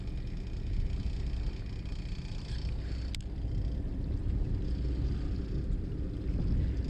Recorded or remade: recorded